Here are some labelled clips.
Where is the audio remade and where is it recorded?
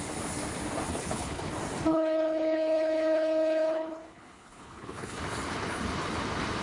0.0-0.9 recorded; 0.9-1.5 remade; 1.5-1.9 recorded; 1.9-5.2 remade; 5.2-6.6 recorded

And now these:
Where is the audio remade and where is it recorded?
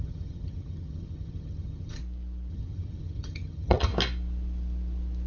0.0-2.0 remade; 2.0-2.5 recorded; 2.5-3.9 remade; 3.9-5.3 recorded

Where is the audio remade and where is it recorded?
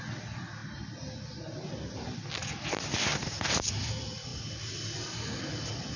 0.0-3.1 recorded; 3.1-3.9 remade; 3.9-6.0 recorded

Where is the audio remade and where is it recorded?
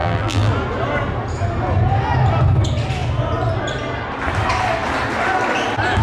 0.0-0.5 remade; 0.5-6.0 recorded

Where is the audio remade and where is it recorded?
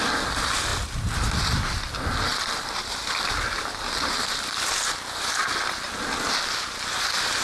0.0-7.4 recorded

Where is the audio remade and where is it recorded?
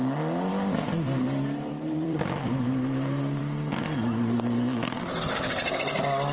0.0-0.5 recorded; 0.5-3.4 remade; 3.4-6.3 recorded